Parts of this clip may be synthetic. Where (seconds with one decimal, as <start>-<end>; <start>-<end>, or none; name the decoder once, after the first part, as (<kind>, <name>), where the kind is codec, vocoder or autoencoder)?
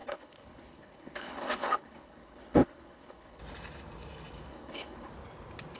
0.0-3.4 (codec, HILCodec); 4.5-5.1